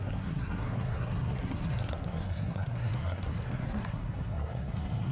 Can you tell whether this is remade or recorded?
remade